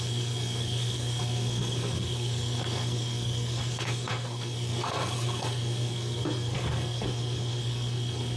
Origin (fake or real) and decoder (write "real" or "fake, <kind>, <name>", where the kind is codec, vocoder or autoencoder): fake, codec, SNAC